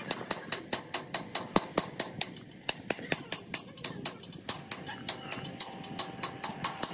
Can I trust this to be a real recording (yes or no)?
yes